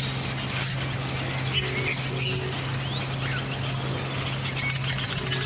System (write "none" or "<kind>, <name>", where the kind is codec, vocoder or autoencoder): none